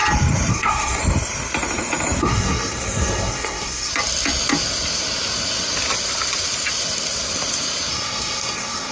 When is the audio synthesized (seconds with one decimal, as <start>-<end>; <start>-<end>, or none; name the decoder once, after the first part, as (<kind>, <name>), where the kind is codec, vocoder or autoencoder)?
0.5-1.0 (codec, SNAC); 2.2-3.9; 7.9-8.9